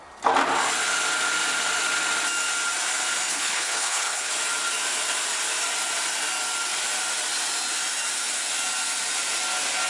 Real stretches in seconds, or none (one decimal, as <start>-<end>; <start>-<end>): 0.0-3.3; 4.3-9.9